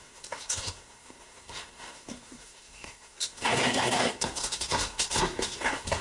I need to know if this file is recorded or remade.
remade